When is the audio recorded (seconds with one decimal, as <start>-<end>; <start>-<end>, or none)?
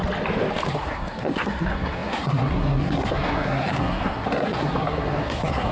0.0-0.7